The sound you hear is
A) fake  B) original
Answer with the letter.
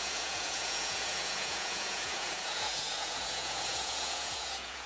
A